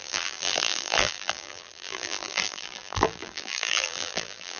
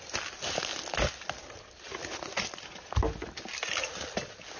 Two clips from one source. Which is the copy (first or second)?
first